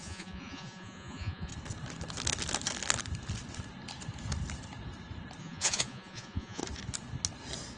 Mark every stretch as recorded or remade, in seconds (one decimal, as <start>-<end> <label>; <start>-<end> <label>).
0.0-1.5 remade; 1.5-5.4 recorded; 5.4-6.6 remade; 6.6-7.8 recorded